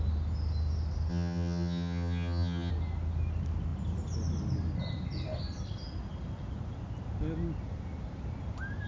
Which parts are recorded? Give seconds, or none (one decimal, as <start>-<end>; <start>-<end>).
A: 0.0-1.1; 2.7-8.9